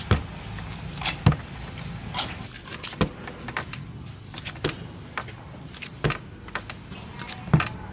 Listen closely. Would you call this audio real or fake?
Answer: real